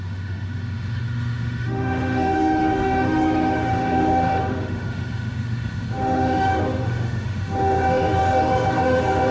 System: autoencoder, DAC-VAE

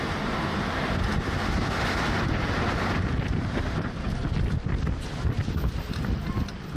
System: none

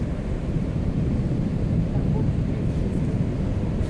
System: none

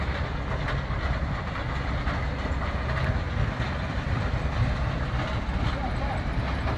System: none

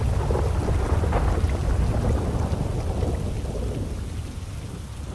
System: none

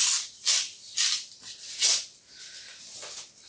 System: none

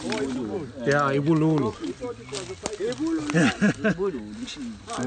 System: none